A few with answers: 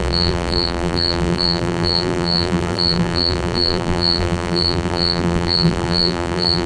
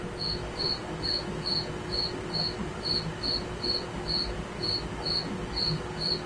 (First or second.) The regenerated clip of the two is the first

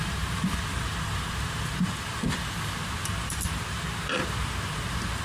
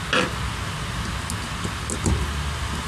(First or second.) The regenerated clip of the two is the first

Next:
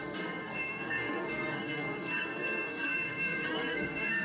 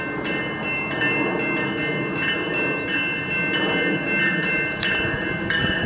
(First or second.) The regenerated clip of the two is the first